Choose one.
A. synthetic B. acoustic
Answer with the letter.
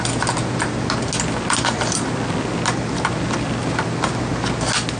B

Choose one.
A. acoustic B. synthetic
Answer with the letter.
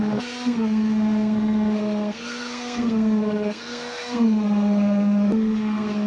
B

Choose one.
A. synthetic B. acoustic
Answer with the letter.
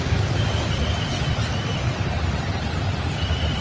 B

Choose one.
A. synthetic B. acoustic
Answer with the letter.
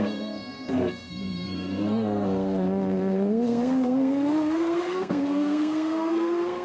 A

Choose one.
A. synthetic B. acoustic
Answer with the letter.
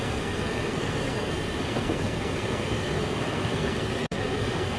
A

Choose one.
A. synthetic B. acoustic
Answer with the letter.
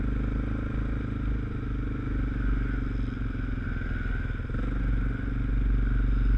B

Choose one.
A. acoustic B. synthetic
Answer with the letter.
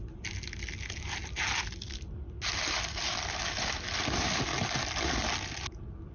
A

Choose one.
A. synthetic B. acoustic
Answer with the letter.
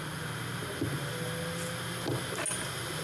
B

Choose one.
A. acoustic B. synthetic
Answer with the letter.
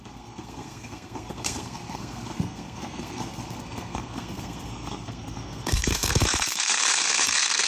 B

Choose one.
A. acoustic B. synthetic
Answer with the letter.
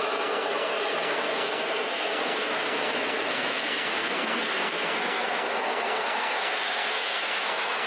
B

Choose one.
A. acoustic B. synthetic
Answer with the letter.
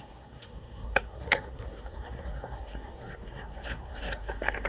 B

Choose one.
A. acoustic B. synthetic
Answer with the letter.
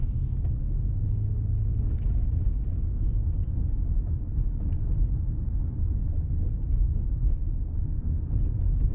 A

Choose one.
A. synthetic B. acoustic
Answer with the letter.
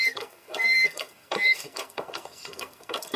A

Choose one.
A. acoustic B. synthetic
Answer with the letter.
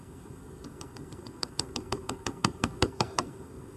B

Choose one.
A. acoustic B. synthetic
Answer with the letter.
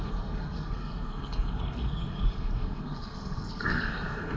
B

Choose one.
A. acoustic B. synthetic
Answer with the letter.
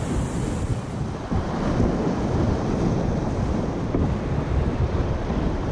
A